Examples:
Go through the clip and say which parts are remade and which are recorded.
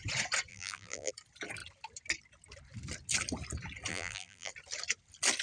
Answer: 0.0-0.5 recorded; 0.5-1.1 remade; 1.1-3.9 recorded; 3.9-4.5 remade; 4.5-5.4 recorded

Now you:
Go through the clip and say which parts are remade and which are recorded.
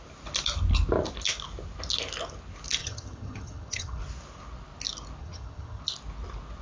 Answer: 0.0-2.8 recorded; 2.8-4.0 remade; 4.0-5.2 recorded; 5.2-5.8 remade; 5.8-6.6 recorded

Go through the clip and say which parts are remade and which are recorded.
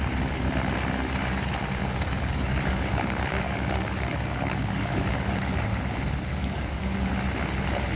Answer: 0.0-1.8 recorded; 1.8-5.8 remade; 5.8-6.3 recorded; 6.3-7.1 remade; 7.1-8.0 recorded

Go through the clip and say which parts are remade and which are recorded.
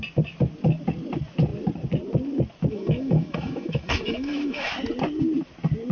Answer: 0.0-2.7 recorded; 2.7-4.7 remade; 4.7-5.9 recorded